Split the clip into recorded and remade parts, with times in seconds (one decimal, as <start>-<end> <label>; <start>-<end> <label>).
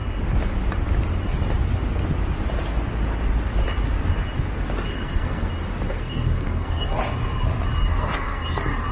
0.0-4.9 recorded; 4.9-5.5 remade; 5.5-5.9 recorded; 5.9-6.9 remade; 6.9-7.9 recorded; 7.9-8.4 remade; 8.4-8.9 recorded